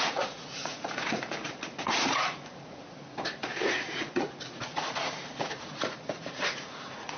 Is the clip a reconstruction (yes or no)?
yes